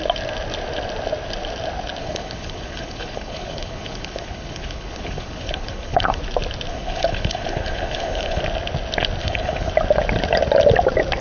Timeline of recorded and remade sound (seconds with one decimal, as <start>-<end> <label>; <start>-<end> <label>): 0.0-2.0 recorded; 2.0-6.2 remade; 6.2-6.7 recorded; 6.7-8.4 remade; 8.4-9.2 recorded; 9.2-9.7 remade; 9.7-11.2 recorded